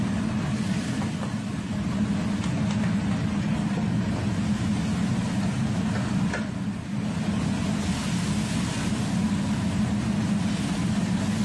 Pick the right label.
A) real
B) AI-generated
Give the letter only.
A